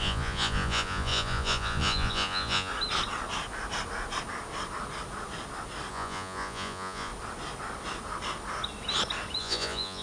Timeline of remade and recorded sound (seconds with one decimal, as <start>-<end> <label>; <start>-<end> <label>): 0.0-2.7 remade; 2.7-5.9 recorded; 5.9-7.1 remade; 7.1-9.4 recorded; 9.4-10.0 remade